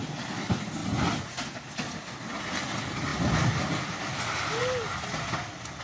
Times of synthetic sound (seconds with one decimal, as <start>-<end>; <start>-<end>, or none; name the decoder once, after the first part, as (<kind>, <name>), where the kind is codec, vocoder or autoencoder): none

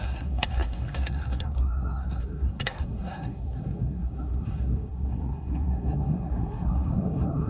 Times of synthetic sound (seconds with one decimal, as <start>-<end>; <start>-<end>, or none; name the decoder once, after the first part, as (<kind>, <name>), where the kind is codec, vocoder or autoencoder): 0.0-7.5 (codec, SNAC)

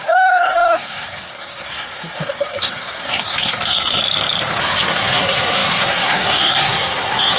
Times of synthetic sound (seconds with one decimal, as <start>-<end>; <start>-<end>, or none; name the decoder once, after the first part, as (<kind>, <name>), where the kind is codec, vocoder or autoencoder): 0.0-4.0 (codec, SNAC); 4.6-7.4

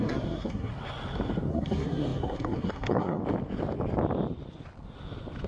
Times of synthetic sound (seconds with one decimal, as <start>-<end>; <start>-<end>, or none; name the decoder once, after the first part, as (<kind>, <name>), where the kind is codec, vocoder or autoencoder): 0.0-0.7 (codec, SNAC); 1.5-3.2

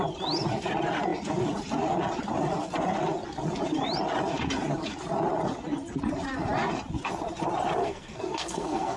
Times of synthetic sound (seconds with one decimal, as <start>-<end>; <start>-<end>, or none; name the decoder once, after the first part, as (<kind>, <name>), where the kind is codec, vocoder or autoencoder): 7.8-9.0 (codec, SNAC)